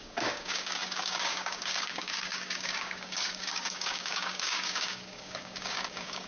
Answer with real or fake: fake